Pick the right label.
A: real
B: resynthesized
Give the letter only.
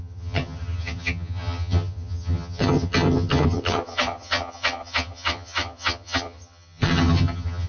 B